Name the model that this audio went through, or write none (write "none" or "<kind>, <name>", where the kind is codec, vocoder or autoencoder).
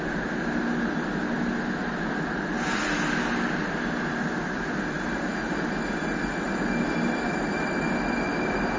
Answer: none